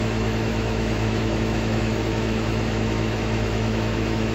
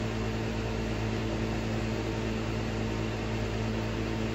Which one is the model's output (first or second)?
first